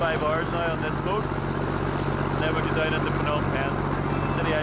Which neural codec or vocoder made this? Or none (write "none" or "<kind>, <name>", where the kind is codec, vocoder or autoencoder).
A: none